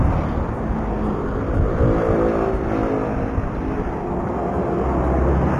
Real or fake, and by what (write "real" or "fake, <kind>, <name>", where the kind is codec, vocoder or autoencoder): real